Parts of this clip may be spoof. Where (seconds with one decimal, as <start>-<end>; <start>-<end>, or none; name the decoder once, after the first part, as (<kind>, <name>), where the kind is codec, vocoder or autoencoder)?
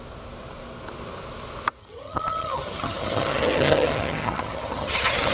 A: 1.8-5.3 (vocoder, HiFi-GAN)